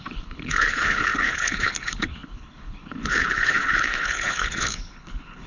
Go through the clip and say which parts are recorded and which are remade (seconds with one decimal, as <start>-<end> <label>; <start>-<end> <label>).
0.0-5.5 remade